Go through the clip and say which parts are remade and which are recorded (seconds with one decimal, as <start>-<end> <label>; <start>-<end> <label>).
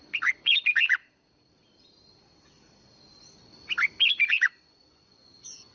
0.0-1.0 remade; 1.0-4.3 recorded; 4.3-5.7 remade